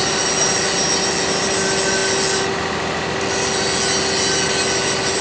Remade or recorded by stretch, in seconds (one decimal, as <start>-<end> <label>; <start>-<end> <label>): 0.0-5.2 recorded